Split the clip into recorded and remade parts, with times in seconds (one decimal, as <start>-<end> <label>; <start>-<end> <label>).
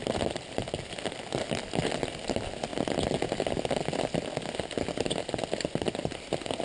0.0-6.6 recorded